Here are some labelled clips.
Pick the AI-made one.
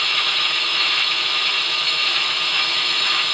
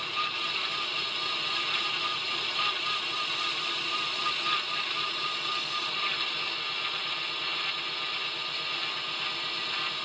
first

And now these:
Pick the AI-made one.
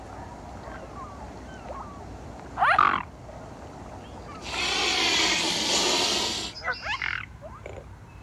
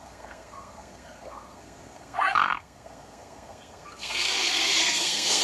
second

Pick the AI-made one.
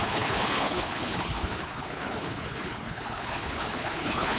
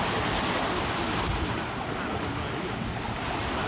first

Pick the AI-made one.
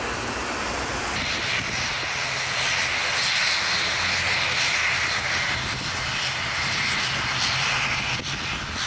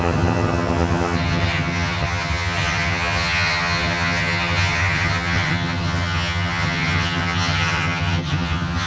second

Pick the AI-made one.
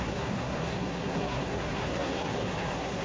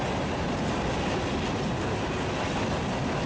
first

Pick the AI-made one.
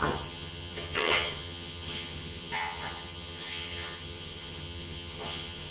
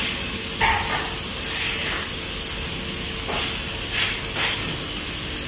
first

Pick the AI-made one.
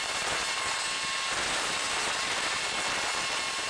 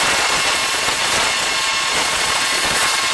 second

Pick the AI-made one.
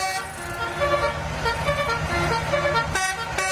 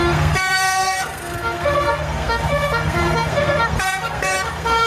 second